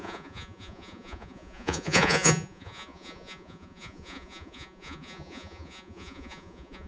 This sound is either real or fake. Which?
fake